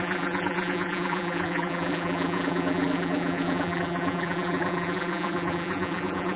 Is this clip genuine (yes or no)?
no